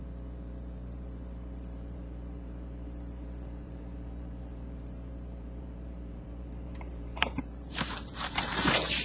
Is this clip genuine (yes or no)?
no